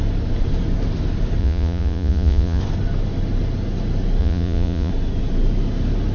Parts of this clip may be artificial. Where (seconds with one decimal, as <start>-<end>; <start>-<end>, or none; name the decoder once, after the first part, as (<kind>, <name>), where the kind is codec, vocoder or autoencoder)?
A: 1.4-2.6 (vocoder, Vocos); 4.2-4.9